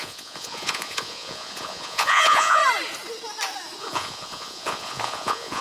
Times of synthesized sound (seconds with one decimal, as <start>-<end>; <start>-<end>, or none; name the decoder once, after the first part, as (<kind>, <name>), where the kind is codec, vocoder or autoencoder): 0.0-2.6 (vocoder, Vocos); 3.8-5.6